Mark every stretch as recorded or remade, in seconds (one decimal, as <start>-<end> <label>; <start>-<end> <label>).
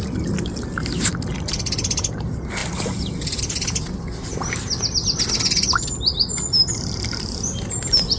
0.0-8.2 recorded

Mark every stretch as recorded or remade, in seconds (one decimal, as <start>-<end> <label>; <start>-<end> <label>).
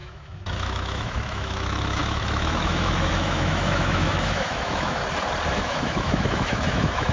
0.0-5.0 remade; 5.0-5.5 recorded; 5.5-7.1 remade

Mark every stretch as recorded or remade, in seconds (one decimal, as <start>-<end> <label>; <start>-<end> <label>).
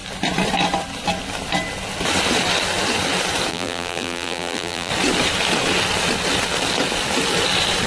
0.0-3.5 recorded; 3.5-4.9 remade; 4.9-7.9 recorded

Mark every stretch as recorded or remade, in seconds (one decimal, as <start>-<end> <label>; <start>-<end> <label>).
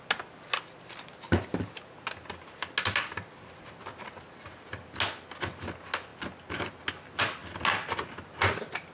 0.0-8.9 recorded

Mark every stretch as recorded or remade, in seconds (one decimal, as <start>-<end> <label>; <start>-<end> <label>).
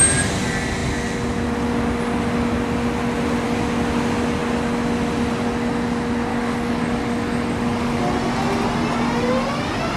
0.0-6.3 recorded; 6.3-8.0 remade; 8.0-10.0 recorded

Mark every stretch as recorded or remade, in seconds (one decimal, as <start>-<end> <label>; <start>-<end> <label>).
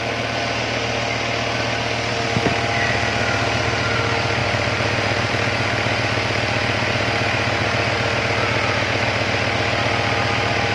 0.0-4.4 recorded; 4.4-5.3 remade; 5.3-10.7 recorded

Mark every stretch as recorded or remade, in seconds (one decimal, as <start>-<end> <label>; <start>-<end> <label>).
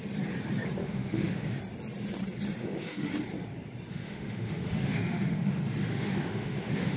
0.0-0.8 recorded; 0.8-1.6 remade; 1.6-2.6 recorded; 2.6-3.1 remade; 3.1-3.9 recorded; 3.9-7.0 remade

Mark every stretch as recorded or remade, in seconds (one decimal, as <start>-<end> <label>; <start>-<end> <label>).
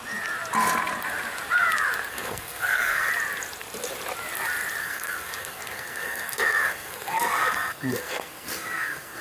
0.0-2.1 recorded; 2.1-3.1 remade; 3.1-4.8 recorded; 4.8-9.2 remade